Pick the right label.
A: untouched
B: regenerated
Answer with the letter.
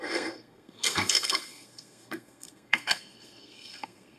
B